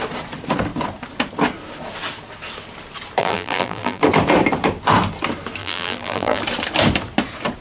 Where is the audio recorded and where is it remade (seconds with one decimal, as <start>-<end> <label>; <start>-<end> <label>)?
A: 0.0-3.2 recorded; 3.2-4.0 remade; 4.0-5.6 recorded; 5.6-6.4 remade; 6.4-7.6 recorded